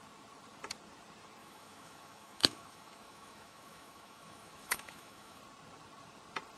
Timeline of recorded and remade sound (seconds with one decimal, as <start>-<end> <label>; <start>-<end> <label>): 0.0-1.4 recorded; 1.4-5.4 remade; 5.4-6.6 recorded